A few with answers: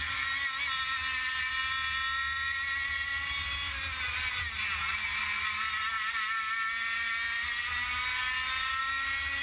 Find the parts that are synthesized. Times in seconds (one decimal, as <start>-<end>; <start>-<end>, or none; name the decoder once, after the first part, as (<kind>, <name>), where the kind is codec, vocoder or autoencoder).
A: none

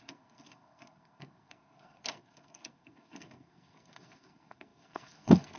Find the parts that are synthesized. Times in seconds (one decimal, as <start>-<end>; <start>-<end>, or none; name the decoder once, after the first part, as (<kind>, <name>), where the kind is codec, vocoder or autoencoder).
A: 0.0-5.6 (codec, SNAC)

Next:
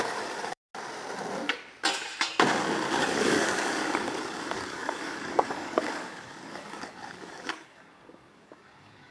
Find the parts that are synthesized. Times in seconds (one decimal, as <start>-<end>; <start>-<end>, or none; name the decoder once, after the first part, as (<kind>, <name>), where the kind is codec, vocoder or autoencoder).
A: 0.0-0.7 (codec, DAC); 3.0-9.1

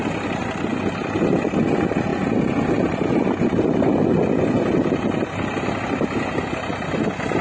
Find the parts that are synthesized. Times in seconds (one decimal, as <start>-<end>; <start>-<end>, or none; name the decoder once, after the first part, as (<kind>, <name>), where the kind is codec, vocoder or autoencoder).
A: none

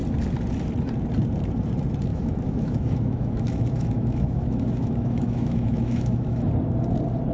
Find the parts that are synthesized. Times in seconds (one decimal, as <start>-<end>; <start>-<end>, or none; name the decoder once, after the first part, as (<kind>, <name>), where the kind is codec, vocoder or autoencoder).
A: 2.1-6.5 (autoencoder, DAC-VAE)

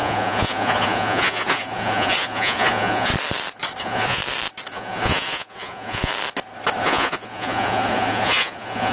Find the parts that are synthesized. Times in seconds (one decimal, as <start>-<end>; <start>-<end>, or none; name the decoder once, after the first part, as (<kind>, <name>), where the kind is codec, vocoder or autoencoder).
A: 0.0-3.1 (vocoder, Vocos); 3.8-4.2; 4.7-6.1; 6.8-8.9

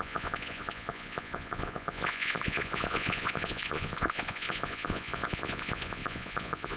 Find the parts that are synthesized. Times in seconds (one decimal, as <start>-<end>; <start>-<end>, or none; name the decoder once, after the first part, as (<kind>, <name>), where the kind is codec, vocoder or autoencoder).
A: 0.0-6.8 (vocoder, Vocos)